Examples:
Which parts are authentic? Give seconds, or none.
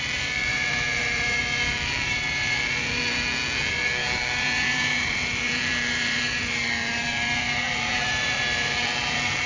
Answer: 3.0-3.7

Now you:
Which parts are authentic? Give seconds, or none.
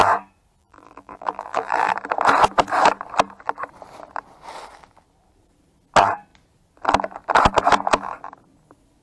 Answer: 0.0-0.6; 1.9-9.0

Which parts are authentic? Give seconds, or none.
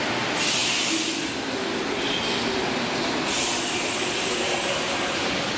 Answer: 0.0-5.6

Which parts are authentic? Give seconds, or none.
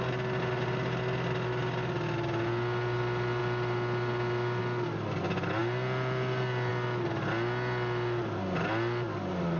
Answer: 0.0-9.6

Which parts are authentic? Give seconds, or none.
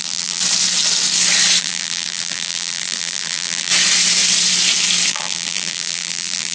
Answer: 0.4-1.6; 3.7-5.1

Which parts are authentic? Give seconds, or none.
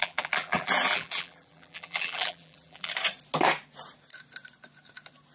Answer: 2.9-5.3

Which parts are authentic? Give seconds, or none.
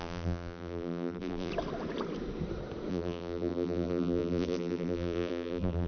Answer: 1.5-2.9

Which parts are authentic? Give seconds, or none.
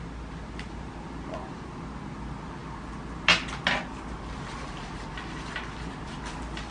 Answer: 0.0-6.7